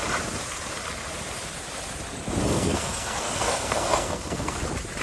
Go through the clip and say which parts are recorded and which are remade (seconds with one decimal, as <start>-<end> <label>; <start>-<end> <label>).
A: 0.0-2.4 recorded; 2.4-4.6 remade; 4.6-5.0 recorded